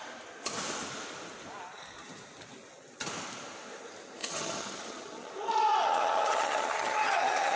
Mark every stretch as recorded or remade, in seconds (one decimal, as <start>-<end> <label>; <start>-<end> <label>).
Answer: 0.0-4.2 recorded; 4.2-5.3 remade; 5.3-5.8 recorded; 5.8-7.6 remade